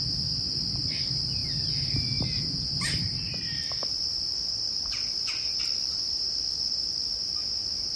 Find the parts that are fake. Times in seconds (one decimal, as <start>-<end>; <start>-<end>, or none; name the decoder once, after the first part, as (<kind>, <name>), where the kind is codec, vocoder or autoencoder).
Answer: none